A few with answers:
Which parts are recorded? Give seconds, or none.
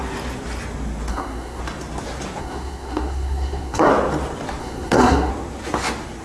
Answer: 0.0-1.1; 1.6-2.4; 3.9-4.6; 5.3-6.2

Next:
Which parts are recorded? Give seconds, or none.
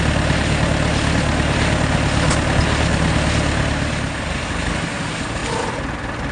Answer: 0.0-6.3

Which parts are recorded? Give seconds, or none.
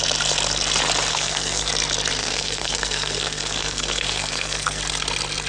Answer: 0.0-1.1; 1.7-2.2; 4.8-5.5